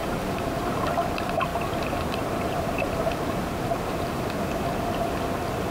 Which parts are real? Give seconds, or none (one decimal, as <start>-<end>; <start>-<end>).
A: 0.7-1.5; 4.5-5.7